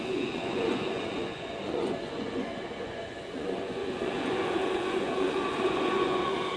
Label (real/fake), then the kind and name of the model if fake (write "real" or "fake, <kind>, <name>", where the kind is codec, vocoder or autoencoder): fake, vocoder, Vocos